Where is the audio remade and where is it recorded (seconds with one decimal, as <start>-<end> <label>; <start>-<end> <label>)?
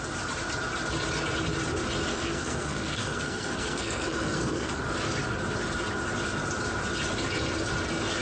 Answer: 0.0-2.1 recorded; 2.1-4.8 remade; 4.8-8.2 recorded